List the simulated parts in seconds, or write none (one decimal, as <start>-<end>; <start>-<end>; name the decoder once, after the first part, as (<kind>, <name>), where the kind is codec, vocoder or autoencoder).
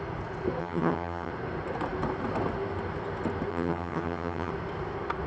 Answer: 0.6-1.3 (vocoder, HiFi-GAN); 3.5-4.5